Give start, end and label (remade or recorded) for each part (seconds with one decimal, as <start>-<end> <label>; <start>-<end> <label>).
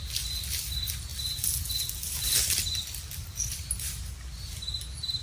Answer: 0.0-5.2 recorded